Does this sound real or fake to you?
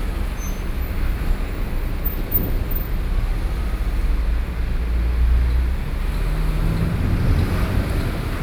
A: real